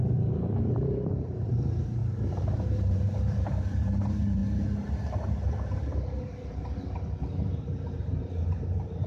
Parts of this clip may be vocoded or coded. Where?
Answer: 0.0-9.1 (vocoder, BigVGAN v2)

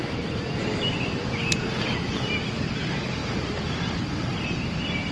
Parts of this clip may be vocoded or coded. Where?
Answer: none

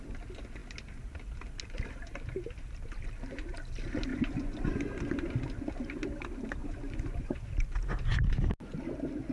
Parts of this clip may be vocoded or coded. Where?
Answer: 4.1-4.8 (vocoder, Vocos); 6.6-7.5

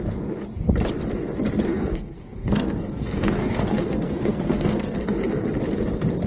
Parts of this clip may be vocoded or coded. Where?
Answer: 1.7-5.5 (codec, SNAC)